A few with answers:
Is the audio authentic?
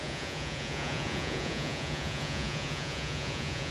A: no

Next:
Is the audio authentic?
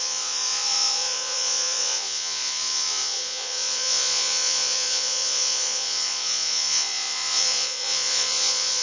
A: no